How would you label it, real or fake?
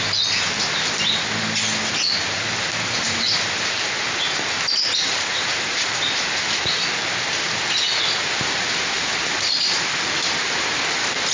real